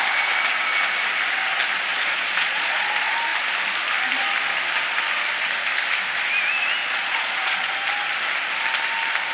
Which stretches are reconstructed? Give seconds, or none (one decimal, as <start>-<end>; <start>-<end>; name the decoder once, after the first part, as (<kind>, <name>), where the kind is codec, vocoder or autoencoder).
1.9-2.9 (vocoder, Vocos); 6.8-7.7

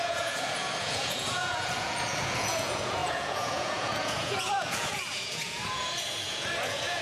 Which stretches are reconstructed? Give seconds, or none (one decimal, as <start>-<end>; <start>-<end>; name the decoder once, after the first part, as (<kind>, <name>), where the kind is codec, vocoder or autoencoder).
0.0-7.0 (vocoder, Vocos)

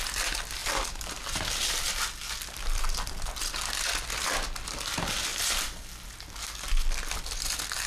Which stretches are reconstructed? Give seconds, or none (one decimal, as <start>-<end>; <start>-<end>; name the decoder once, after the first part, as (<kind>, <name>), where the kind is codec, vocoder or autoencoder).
0.6-3.4 (vocoder, BigVGAN v2); 5.3-7.5

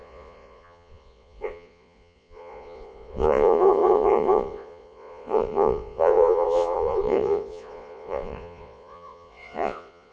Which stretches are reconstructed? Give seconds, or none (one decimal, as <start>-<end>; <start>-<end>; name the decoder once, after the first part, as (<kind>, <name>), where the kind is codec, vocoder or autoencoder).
0.0-10.1 (vocoder, Vocos)

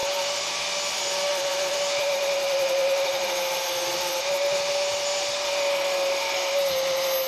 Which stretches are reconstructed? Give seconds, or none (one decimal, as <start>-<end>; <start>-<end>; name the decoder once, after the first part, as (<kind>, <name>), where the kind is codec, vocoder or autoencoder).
1.5-2.2 (vocoder, BigVGAN v2)

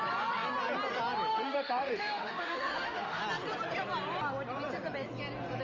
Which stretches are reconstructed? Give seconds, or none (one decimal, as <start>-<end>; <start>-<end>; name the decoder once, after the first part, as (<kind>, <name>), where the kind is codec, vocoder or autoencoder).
1.3-3.2 (autoencoder, DAC-VAE)

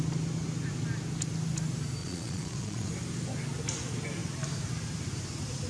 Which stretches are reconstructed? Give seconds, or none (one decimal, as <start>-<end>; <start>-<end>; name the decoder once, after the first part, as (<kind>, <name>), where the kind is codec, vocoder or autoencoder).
2.0-2.9 (vocoder, Vocos)

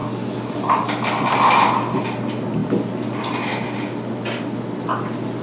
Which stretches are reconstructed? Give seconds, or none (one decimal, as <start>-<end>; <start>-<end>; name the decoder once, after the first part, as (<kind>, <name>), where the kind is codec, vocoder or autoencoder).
none